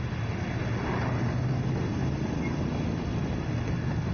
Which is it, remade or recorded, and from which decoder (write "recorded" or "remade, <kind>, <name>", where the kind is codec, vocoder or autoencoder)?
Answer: recorded